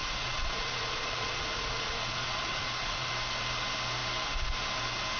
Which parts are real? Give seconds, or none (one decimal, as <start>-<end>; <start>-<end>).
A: 3.1-5.2